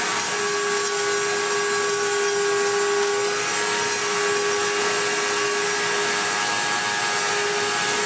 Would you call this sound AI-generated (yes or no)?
no